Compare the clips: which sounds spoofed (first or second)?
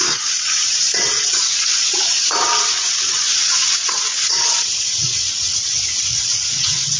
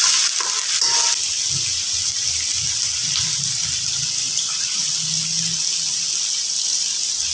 first